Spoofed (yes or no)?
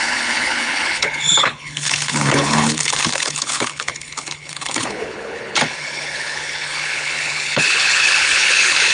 yes